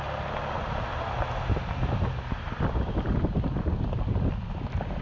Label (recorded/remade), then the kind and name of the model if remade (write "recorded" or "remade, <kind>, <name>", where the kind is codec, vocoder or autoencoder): recorded